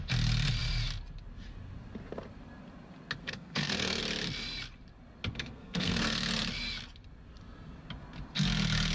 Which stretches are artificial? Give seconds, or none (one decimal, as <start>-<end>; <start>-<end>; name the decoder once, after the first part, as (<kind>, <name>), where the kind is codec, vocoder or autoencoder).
3.2-4.0 (codec, SNAC); 5.3-6.3